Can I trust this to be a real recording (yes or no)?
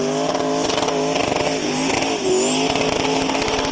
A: yes